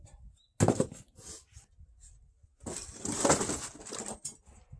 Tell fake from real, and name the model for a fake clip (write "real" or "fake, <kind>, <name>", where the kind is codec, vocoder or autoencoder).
real